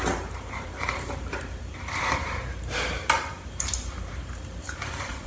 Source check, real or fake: fake